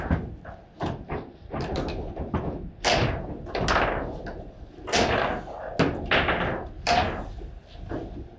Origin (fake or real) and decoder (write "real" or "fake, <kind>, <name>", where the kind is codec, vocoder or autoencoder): real